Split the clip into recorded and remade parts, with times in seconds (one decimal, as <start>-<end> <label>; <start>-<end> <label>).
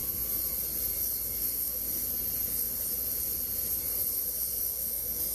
0.0-1.4 recorded; 1.4-1.8 remade; 1.8-4.7 recorded; 4.7-5.3 remade